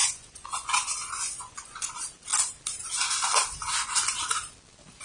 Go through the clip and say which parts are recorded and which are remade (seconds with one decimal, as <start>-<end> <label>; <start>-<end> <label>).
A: 0.0-1.9 remade; 1.9-5.0 recorded